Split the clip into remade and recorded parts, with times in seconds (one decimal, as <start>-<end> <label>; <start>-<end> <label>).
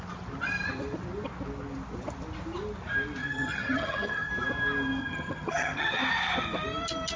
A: 0.0-3.2 recorded; 3.2-4.3 remade; 4.3-5.0 recorded; 5.0-6.0 remade; 6.0-7.2 recorded